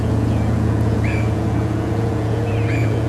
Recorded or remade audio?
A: remade